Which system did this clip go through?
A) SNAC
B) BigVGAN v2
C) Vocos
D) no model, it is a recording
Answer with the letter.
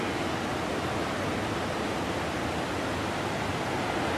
D